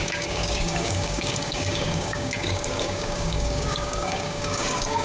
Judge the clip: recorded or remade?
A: remade